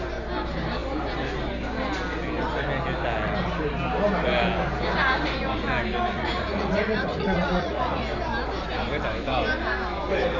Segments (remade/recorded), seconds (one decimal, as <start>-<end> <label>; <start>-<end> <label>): 0.0-6.1 recorded; 6.1-8.0 remade; 8.0-10.4 recorded